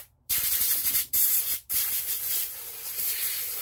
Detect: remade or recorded remade